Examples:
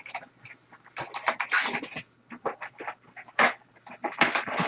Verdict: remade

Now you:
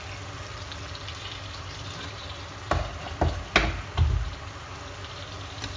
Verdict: recorded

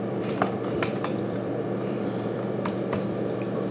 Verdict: remade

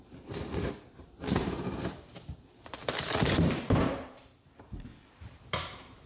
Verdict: remade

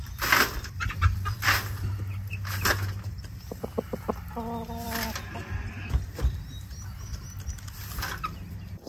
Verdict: recorded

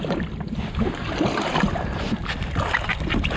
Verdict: recorded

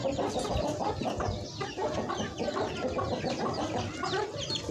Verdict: recorded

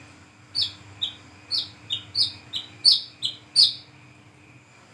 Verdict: recorded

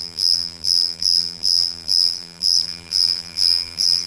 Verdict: remade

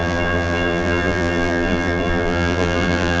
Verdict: remade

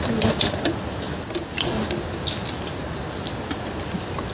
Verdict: recorded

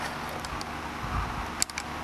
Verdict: recorded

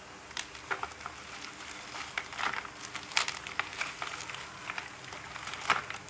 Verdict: recorded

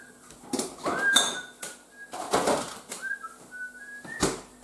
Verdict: recorded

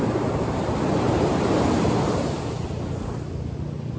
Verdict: recorded